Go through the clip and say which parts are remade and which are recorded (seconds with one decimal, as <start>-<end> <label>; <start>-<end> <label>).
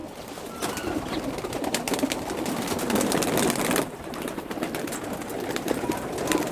0.0-6.5 recorded